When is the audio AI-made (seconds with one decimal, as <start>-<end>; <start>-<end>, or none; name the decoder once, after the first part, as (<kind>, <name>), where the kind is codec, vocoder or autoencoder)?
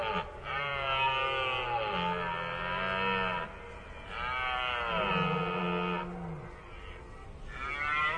none